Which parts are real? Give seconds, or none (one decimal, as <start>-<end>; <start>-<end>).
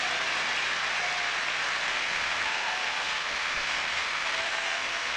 0.0-1.9